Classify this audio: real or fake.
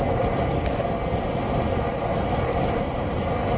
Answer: real